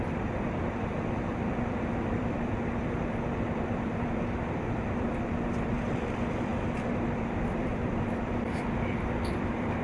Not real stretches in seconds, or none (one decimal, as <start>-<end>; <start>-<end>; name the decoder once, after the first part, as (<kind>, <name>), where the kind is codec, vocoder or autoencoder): 0.0-6.5 (vocoder, BigVGAN v2); 7.2-9.8